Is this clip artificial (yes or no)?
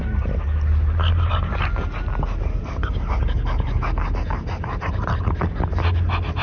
no